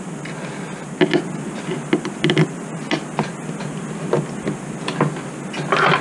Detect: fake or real real